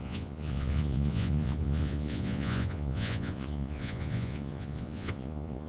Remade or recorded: remade